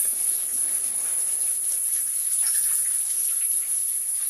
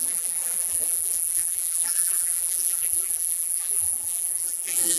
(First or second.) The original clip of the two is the first